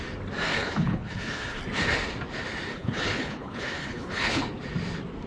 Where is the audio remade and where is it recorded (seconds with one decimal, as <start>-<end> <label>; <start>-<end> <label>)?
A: 0.0-0.5 recorded; 0.5-1.6 remade; 1.6-2.7 recorded; 2.7-4.4 remade; 4.4-5.3 recorded